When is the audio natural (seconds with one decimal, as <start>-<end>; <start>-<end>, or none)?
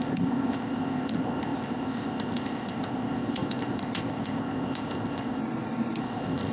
5.4-6.0